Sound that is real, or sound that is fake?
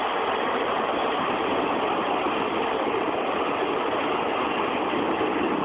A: real